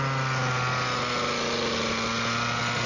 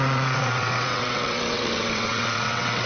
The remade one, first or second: second